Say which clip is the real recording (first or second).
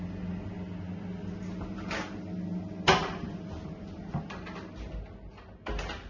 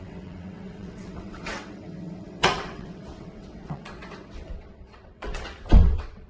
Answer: first